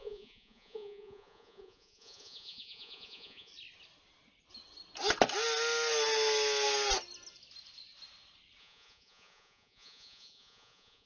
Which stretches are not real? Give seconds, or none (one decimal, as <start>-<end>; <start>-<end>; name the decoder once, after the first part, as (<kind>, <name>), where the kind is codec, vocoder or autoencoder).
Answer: 0.0-3.5 (vocoder, Vocos); 8.6-11.1